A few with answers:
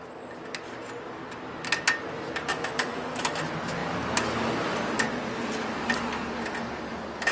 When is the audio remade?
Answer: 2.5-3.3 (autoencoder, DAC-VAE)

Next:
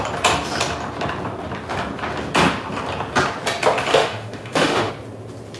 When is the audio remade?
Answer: 3.9-4.9 (autoencoder, DAC-VAE)